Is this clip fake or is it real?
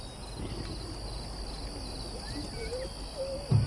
real